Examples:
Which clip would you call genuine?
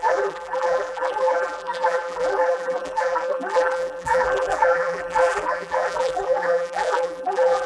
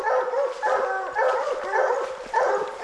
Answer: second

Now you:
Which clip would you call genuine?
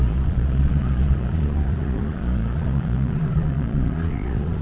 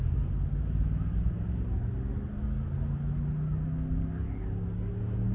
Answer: second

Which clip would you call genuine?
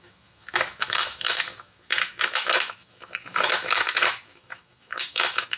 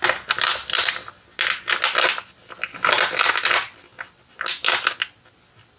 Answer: second